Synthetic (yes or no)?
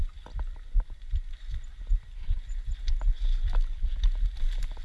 no